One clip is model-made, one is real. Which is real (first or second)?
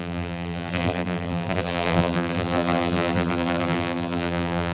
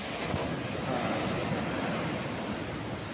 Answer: second